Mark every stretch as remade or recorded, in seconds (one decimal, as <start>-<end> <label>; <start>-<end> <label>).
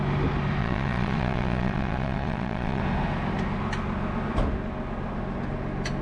0.0-0.6 recorded; 0.6-2.8 remade; 2.8-6.0 recorded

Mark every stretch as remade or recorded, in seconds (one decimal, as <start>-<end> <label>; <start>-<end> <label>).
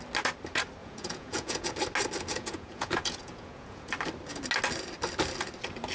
0.0-0.8 recorded; 0.8-1.7 remade; 1.7-2.3 recorded; 2.3-3.9 remade; 3.9-5.9 recorded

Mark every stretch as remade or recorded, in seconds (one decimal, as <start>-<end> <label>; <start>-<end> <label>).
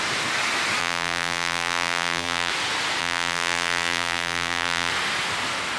0.0-0.8 recorded; 0.8-2.5 remade; 2.5-3.0 recorded; 3.0-4.9 remade; 4.9-5.8 recorded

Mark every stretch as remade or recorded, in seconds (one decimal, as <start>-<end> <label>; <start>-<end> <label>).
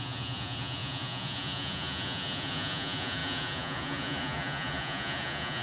0.0-5.6 remade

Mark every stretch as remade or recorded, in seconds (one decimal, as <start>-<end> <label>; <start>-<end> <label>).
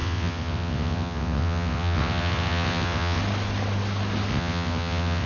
0.0-3.2 remade; 3.2-4.3 recorded; 4.3-5.3 remade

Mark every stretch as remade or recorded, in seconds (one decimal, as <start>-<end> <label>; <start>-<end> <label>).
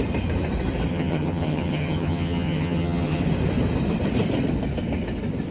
0.0-0.9 recorded; 0.9-3.2 remade; 3.2-5.5 recorded